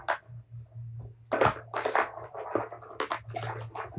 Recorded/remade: recorded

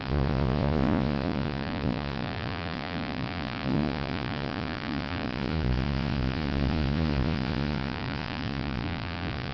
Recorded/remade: remade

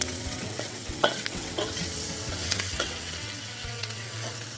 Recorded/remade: remade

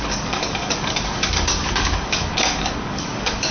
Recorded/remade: remade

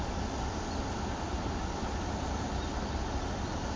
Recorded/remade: recorded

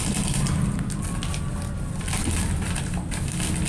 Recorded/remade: recorded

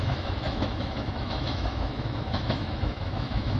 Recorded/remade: remade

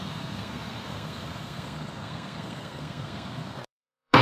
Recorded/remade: remade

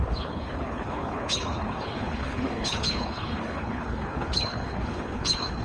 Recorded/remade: remade